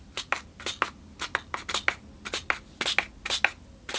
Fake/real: real